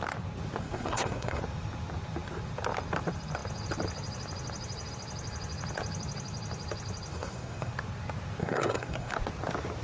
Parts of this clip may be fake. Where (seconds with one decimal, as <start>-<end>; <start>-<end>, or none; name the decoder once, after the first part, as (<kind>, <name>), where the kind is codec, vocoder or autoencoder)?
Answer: 0.6-1.4 (codec, SNAC); 7.1-7.7; 8.4-9.1